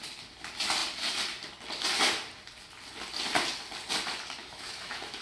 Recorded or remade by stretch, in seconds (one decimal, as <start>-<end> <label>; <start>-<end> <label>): 0.0-4.4 recorded; 4.4-5.2 remade